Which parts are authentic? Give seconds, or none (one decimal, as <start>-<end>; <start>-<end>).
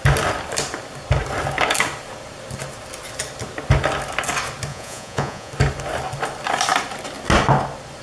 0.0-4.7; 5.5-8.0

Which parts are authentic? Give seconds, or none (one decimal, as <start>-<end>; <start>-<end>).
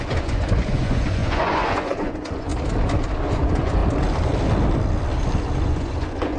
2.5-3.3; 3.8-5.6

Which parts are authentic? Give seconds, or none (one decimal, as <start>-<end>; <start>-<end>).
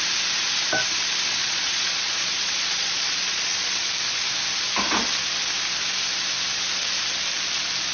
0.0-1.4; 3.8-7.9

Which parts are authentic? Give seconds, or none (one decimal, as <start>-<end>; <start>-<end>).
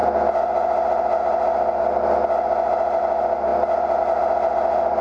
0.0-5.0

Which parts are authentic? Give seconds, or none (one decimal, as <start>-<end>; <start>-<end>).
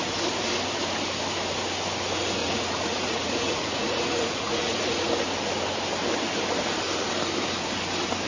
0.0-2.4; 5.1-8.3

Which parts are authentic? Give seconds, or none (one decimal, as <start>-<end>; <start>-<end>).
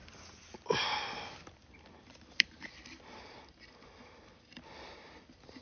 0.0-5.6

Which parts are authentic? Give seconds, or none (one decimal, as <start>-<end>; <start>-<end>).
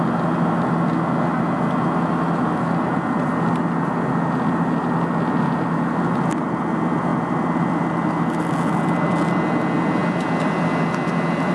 0.0-11.5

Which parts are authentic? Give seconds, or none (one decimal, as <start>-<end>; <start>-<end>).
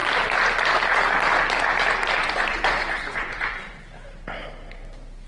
0.0-2.2; 3.8-5.3